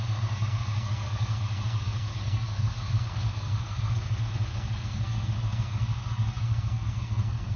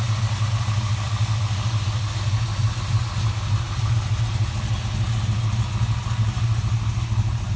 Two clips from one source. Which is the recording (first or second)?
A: second